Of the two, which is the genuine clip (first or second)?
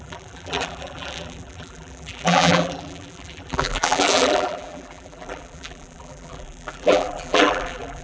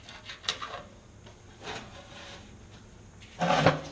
second